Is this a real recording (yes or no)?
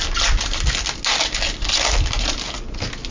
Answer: yes